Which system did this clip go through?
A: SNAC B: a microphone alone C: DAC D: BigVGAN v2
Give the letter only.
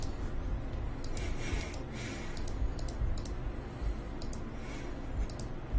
B